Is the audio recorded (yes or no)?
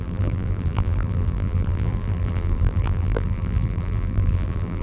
no